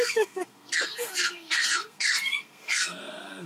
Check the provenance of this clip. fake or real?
fake